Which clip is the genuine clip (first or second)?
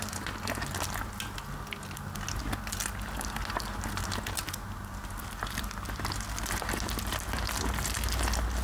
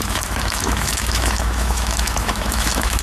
first